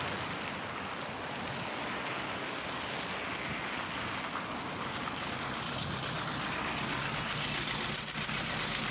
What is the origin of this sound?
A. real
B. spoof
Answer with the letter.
A